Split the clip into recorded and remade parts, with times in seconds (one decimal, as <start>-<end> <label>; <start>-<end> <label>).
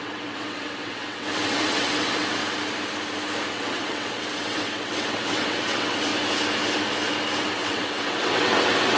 0.0-2.4 remade; 2.4-3.5 recorded; 3.5-6.1 remade; 6.1-7.4 recorded; 7.4-9.0 remade